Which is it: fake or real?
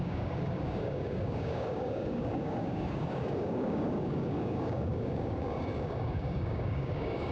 fake